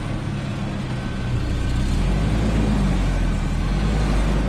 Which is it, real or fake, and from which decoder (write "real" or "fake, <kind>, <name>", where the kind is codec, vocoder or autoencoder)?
real